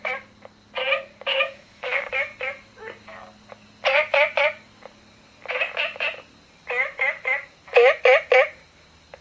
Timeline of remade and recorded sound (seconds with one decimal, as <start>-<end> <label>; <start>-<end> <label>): 0.0-1.3 recorded; 1.3-2.1 remade; 2.1-9.2 recorded